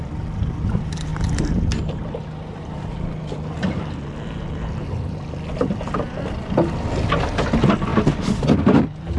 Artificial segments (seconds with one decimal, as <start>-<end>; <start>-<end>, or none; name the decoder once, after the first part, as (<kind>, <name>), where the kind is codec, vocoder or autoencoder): 1.1-2.0 (vocoder, BigVGAN v2)